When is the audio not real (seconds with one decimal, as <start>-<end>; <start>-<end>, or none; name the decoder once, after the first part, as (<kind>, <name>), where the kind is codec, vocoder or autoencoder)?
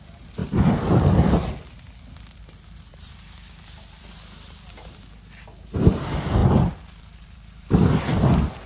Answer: 0.4-5.0 (vocoder, BigVGAN v2); 6.4-7.9